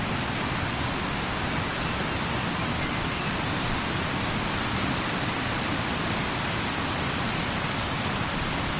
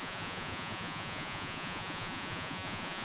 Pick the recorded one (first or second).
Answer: first